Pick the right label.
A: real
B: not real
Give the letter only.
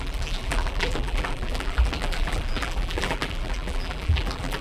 B